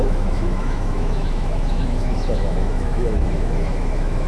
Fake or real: fake